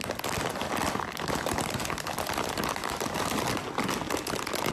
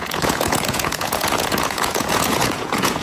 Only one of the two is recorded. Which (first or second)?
first